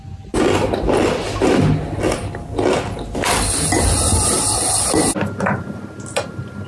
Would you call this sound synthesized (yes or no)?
no